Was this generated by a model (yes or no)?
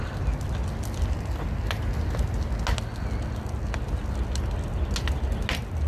no